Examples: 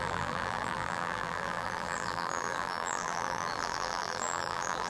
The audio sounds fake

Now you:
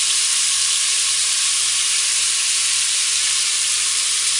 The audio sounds fake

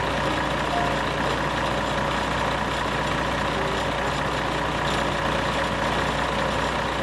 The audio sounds real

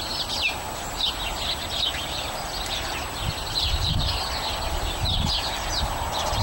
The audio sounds real